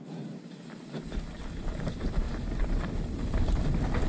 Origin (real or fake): real